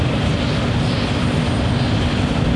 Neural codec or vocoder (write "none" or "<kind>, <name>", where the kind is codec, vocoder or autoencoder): none